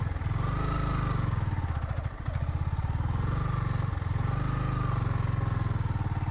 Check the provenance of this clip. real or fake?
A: real